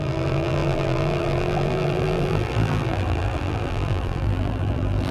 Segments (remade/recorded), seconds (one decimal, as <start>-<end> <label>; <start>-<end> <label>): 0.0-5.1 remade